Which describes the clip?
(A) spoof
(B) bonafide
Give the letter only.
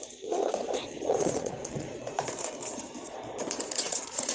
A